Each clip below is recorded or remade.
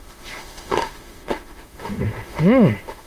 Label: remade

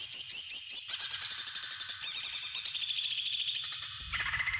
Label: remade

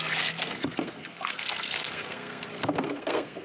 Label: remade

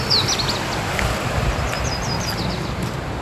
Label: recorded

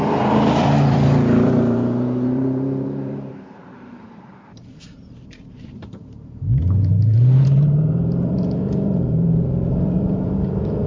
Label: remade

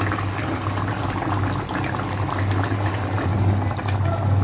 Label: recorded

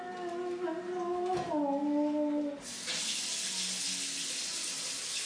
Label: recorded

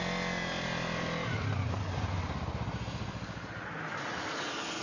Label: recorded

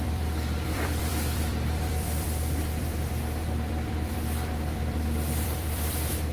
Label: remade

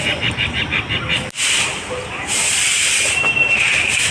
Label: recorded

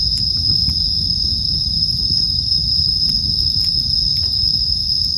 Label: recorded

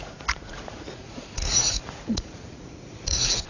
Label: remade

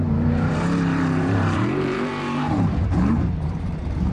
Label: remade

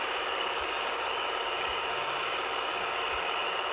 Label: remade